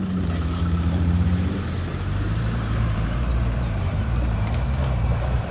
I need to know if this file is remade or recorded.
remade